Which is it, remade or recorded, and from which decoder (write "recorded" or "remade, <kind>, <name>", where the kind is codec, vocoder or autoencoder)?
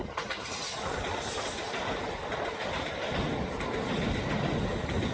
recorded